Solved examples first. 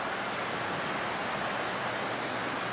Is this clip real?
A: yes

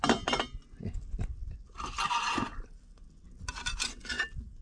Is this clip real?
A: yes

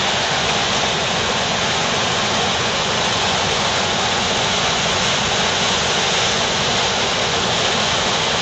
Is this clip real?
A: no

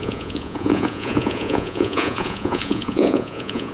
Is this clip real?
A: no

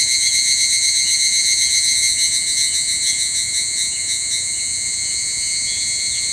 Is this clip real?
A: no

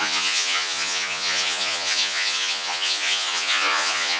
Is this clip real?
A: no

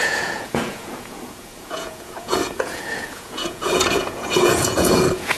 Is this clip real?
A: no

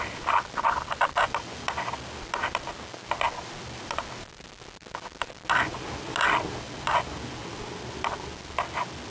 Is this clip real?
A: yes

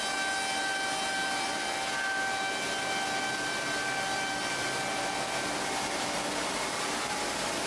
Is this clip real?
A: yes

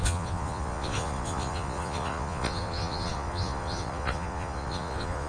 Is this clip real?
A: no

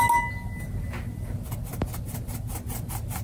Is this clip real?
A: yes